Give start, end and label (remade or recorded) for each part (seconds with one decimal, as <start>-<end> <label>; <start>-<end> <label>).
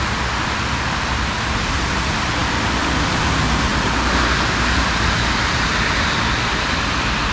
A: 0.0-7.3 recorded